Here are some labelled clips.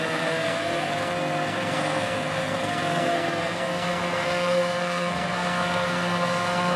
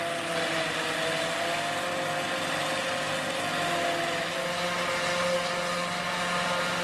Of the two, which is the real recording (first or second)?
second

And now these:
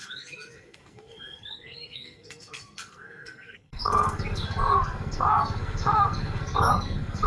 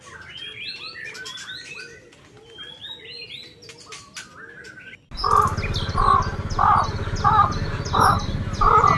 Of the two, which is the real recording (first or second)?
second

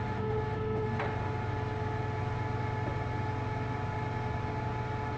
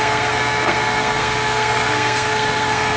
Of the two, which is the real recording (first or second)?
first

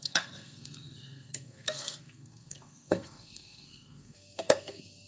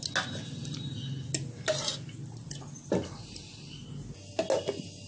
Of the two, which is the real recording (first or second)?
second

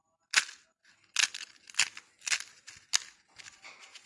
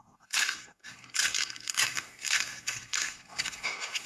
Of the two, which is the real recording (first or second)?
first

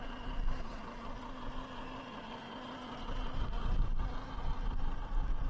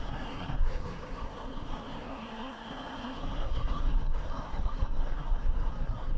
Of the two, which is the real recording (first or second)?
first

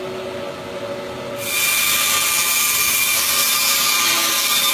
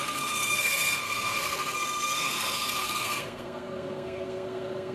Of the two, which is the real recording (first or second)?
first